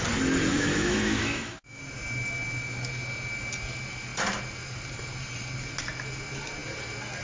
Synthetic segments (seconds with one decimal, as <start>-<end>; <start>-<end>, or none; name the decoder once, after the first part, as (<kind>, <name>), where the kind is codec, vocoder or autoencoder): 0.5-1.8 (autoencoder, DAC-VAE)